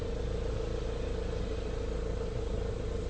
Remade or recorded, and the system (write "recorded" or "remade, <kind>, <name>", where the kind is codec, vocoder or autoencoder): recorded